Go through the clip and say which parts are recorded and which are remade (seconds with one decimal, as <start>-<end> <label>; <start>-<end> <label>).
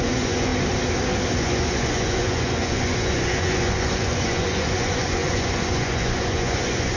0.0-0.5 remade; 0.5-1.3 recorded; 1.3-7.0 remade